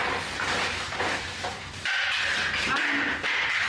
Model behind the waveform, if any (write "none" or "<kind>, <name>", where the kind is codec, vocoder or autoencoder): none